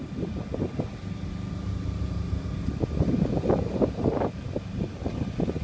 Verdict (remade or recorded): recorded